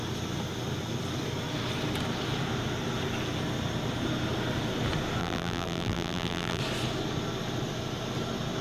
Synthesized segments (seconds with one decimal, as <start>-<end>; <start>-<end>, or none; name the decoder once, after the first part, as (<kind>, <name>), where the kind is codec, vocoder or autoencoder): 5.2-6.6 (vocoder, BigVGAN v2)